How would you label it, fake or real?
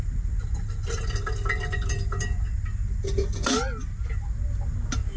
real